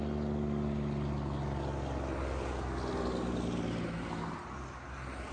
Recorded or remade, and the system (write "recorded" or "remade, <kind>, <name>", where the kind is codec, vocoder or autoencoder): recorded